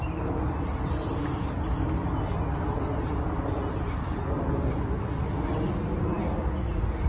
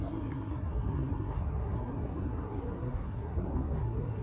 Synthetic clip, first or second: second